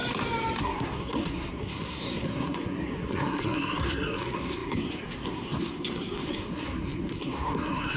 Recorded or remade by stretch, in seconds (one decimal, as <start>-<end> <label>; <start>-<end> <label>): 0.0-0.6 recorded; 0.6-8.0 remade